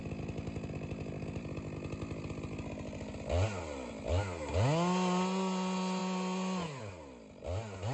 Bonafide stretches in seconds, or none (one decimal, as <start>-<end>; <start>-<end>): 0.0-7.9